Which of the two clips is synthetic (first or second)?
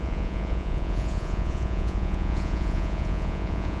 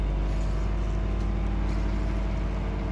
first